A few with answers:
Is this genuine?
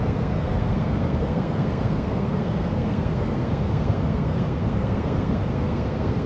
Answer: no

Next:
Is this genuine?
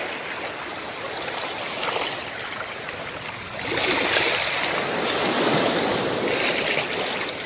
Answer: yes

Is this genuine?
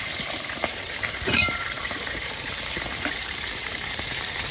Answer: no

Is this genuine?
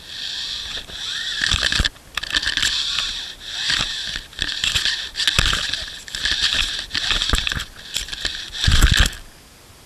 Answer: yes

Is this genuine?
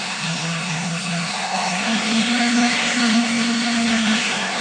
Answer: no